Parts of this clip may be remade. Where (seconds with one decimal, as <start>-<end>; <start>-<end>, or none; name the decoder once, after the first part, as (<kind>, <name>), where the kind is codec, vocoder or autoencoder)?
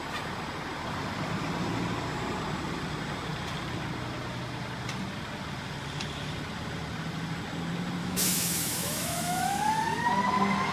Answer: 8.0-9.6 (autoencoder, DAC-VAE)